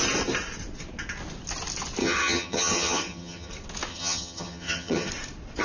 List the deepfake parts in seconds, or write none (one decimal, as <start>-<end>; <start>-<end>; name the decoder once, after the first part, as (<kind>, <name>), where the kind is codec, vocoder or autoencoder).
2.0-3.5 (vocoder, HiFi-GAN); 3.9-5.1